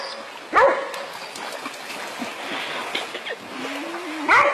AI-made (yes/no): no